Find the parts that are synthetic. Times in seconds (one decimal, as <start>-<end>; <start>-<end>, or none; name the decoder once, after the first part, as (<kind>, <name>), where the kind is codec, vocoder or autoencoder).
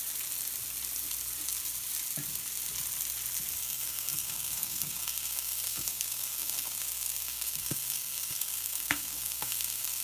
3.6-10.0 (codec, SNAC)